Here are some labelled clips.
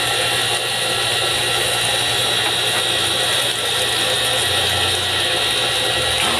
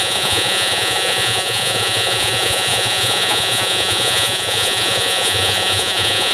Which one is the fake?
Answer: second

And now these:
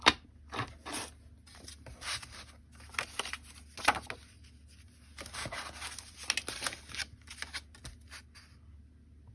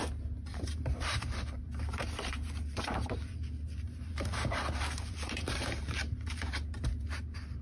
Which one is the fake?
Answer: second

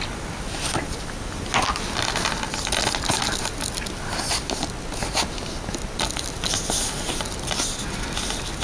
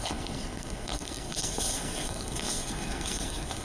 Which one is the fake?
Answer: second